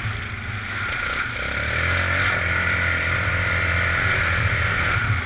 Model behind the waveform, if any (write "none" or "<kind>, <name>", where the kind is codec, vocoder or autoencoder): none